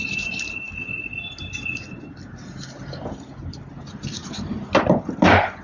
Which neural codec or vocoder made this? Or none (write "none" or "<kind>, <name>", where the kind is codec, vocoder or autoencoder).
none